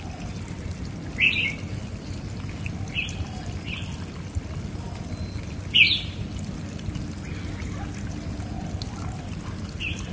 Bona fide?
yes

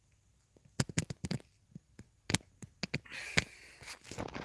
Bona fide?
yes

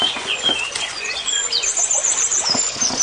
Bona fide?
no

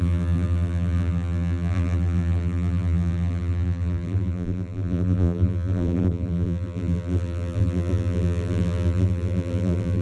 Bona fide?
no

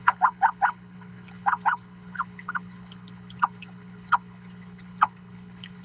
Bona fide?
no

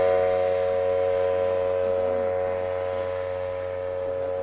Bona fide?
yes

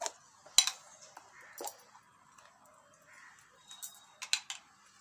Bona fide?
yes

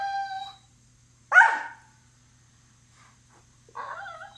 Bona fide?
yes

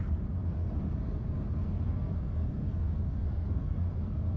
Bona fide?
no